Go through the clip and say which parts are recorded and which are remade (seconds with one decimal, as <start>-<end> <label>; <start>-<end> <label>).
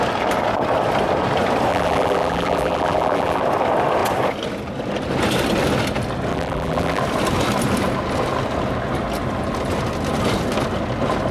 0.0-1.7 recorded; 1.7-3.4 remade; 3.4-6.3 recorded; 6.3-7.0 remade; 7.0-11.3 recorded